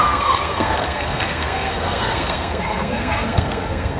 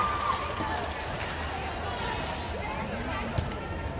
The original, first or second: second